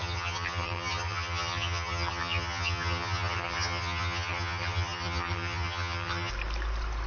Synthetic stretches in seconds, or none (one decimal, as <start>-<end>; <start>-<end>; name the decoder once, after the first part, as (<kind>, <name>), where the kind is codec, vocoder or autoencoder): 0.0-6.3 (vocoder, HiFi-GAN)